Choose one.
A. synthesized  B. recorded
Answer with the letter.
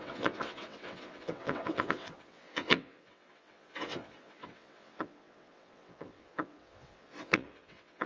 A